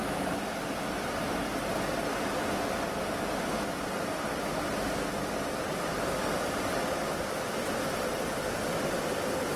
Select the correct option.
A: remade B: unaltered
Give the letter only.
B